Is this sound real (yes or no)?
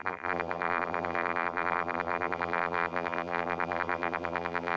no